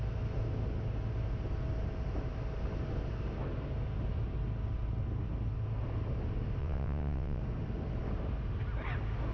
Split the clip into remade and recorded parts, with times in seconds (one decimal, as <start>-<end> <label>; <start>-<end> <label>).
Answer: 0.0-6.6 recorded; 6.6-7.4 remade; 7.4-9.3 recorded